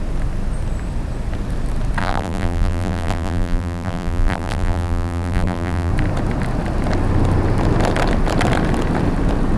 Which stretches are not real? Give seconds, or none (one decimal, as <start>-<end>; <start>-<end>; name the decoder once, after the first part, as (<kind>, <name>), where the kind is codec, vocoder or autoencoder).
2.0-5.9 (vocoder, BigVGAN v2)